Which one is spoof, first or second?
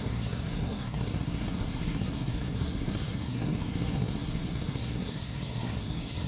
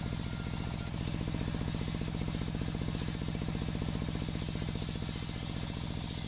first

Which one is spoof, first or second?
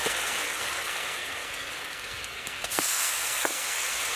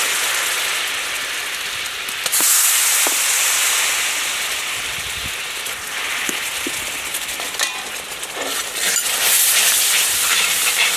first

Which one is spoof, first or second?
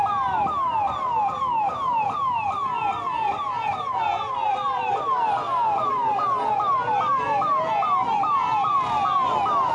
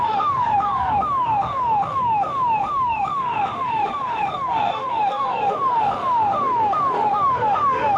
second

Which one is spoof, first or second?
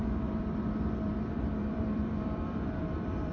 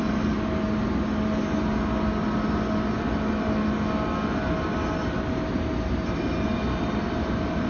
first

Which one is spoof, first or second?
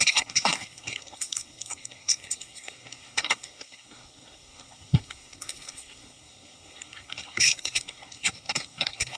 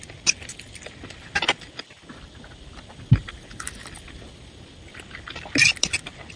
first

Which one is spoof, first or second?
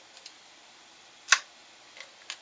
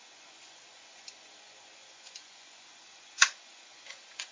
second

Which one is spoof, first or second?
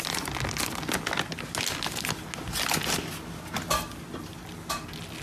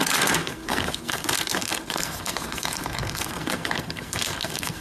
second